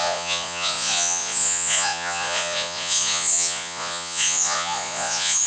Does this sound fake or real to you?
fake